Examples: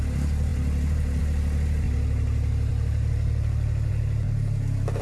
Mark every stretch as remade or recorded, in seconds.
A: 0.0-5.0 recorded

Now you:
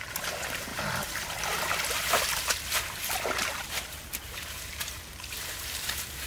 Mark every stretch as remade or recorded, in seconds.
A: 0.0-6.3 recorded

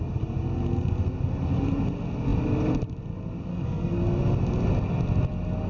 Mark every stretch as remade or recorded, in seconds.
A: 0.0-3.5 recorded; 3.5-4.0 remade; 4.0-5.7 recorded

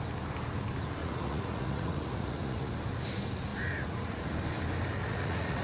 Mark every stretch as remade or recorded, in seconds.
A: 0.0-1.0 recorded; 1.0-2.7 remade; 2.7-3.5 recorded; 3.5-4.3 remade; 4.3-5.0 recorded; 5.0-5.6 remade

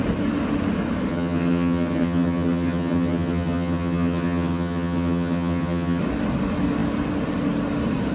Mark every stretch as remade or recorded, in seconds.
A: 0.0-1.1 recorded; 1.1-6.0 remade; 6.0-8.1 recorded

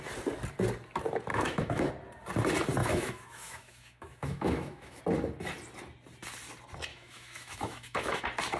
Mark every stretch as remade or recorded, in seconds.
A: 0.0-1.3 recorded; 1.3-1.9 remade; 1.9-2.8 recorded; 2.8-5.0 remade; 5.0-6.9 recorded; 6.9-8.2 remade; 8.2-8.6 recorded

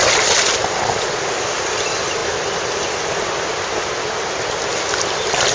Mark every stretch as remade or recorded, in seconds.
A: 0.0-5.5 recorded